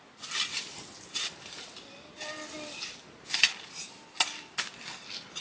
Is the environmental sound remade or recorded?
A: recorded